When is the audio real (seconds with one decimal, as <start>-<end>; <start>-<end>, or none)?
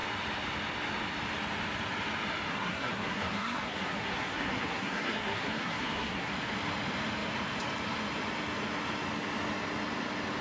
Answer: 0.0-2.5; 6.3-10.4